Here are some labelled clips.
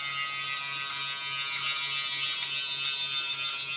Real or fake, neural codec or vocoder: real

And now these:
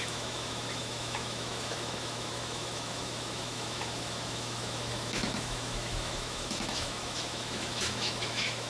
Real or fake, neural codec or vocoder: fake, autoencoder, DAC-VAE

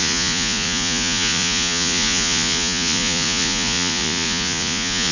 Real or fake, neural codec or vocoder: fake, vocoder, Vocos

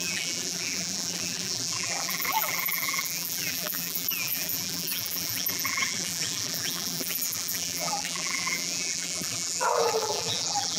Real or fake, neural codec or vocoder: fake, vocoder, BigVGAN v2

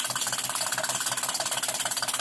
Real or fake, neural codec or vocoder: fake, vocoder, BigVGAN v2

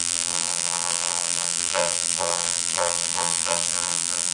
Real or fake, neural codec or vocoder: fake, vocoder, BigVGAN v2